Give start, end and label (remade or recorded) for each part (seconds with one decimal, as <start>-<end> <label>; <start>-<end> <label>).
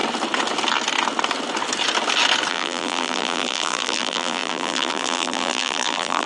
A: 0.0-2.5 recorded; 2.5-6.3 remade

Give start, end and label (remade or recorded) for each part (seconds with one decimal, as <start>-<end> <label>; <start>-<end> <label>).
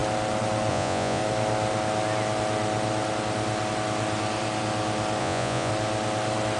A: 0.0-0.7 recorded; 0.7-1.2 remade; 1.2-5.2 recorded; 5.2-5.7 remade; 5.7-6.6 recorded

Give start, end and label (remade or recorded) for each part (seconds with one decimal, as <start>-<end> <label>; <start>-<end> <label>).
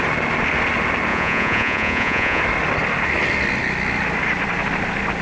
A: 0.0-1.1 recorded; 1.1-2.4 remade; 2.4-5.2 recorded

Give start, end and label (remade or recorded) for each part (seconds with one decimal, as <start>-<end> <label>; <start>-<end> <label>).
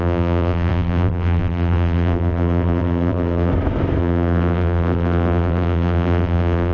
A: 0.0-3.5 remade; 3.5-4.0 recorded; 4.0-6.7 remade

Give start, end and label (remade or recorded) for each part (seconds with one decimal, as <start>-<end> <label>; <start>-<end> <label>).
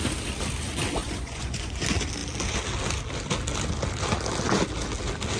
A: 0.0-1.0 recorded; 1.0-1.8 remade; 1.8-5.4 recorded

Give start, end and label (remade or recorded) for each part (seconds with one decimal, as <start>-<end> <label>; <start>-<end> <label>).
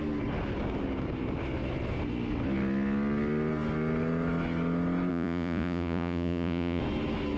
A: 0.0-5.1 recorded; 5.1-6.8 remade; 6.8-7.4 recorded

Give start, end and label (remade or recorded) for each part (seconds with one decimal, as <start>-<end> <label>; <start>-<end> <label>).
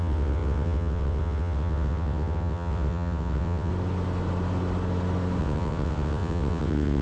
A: 0.0-3.7 remade; 3.7-5.4 recorded; 5.4-7.0 remade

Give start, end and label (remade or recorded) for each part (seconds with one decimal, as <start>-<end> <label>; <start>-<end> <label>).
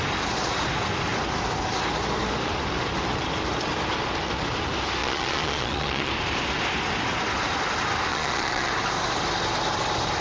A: 0.0-5.0 recorded; 5.0-6.1 remade; 6.1-8.1 recorded; 8.1-8.7 remade; 8.7-10.2 recorded